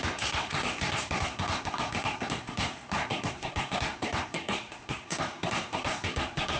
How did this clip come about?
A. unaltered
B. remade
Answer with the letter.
B